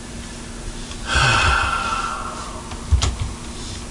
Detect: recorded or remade recorded